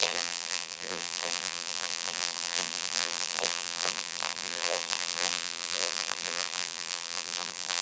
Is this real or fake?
fake